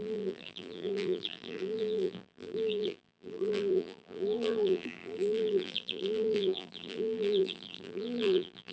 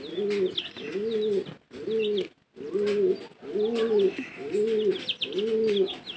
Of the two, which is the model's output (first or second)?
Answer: first